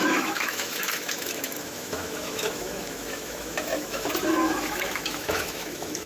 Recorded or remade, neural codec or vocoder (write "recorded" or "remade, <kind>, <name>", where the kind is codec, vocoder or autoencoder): remade, autoencoder, DAC-VAE